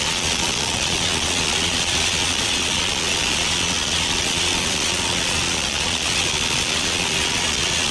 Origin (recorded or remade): remade